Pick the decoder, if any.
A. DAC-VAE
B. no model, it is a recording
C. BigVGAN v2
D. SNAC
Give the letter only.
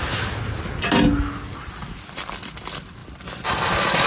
B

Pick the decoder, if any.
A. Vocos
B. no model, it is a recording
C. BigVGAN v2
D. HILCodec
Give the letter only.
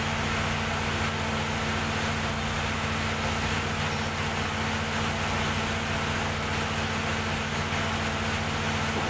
B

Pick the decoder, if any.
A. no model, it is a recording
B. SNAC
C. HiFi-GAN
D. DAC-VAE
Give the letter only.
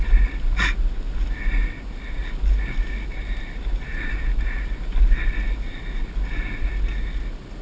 A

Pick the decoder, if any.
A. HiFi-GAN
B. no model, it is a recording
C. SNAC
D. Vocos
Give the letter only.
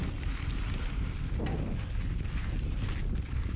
B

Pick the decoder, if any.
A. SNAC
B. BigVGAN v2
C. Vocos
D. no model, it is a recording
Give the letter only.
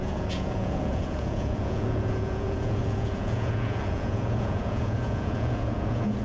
C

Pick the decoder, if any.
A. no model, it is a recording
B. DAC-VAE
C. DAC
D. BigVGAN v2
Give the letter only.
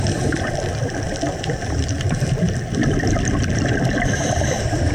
D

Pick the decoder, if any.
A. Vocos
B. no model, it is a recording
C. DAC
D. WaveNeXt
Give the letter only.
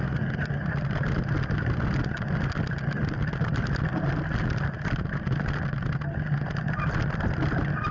B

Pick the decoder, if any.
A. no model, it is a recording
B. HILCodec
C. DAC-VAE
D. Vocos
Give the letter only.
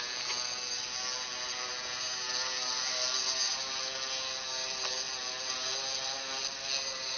A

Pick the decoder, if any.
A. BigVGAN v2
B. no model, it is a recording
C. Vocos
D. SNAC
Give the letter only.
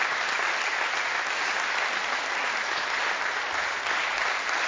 B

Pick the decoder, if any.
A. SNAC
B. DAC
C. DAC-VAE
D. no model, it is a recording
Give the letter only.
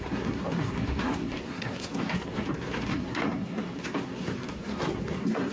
A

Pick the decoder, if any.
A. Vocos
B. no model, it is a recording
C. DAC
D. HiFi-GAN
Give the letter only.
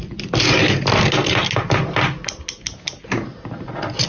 B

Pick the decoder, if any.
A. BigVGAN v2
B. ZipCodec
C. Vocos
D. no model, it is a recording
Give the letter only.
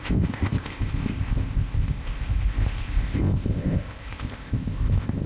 B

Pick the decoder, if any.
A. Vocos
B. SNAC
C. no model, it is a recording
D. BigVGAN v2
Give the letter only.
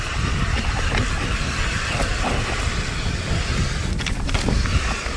C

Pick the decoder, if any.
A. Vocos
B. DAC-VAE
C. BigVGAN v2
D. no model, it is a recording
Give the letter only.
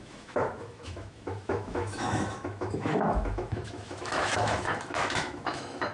B